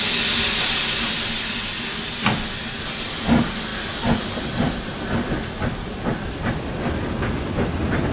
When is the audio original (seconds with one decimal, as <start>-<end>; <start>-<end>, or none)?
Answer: 0.0-8.1